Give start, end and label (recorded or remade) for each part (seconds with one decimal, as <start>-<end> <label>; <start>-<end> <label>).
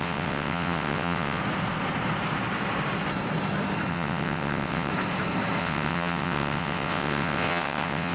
0.0-1.4 remade; 1.4-3.9 recorded; 3.9-4.9 remade; 4.9-5.6 recorded; 5.6-8.1 remade